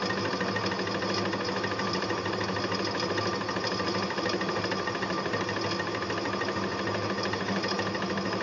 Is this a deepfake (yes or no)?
no